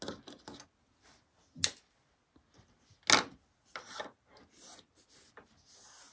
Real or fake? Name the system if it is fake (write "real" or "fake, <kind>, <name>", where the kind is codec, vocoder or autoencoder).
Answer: real